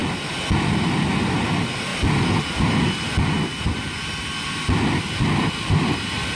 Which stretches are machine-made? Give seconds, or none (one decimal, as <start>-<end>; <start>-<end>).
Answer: none